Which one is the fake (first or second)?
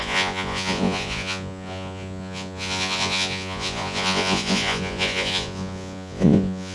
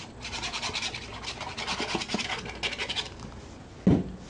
first